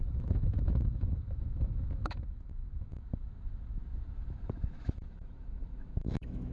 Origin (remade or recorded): remade